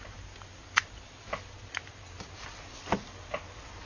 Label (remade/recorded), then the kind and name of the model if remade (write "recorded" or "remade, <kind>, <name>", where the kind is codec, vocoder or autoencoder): recorded